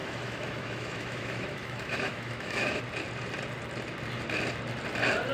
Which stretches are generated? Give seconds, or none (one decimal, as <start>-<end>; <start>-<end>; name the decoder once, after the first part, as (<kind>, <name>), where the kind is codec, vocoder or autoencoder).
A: 0.0-2.8 (autoencoder, DAC-VAE)